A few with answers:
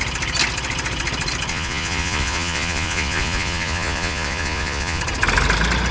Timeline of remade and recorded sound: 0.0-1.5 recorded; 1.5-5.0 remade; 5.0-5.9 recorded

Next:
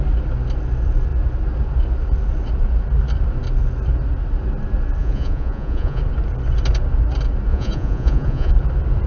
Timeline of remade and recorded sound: 0.0-5.0 recorded; 5.0-6.0 remade; 6.0-7.5 recorded; 7.5-8.5 remade; 8.5-9.1 recorded

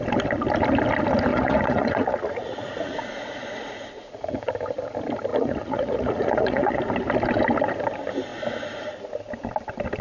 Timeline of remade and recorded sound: 0.0-1.3 recorded; 1.3-4.5 remade; 4.5-5.3 recorded; 5.3-6.8 remade; 6.8-10.0 recorded

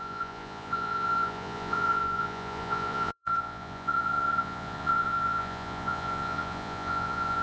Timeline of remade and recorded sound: 0.0-7.4 remade